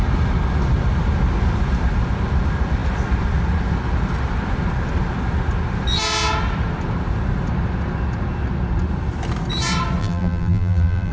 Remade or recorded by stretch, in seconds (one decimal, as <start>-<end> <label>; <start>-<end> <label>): 0.0-10.0 recorded; 10.0-11.1 remade